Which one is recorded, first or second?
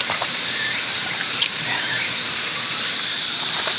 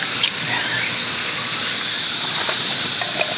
second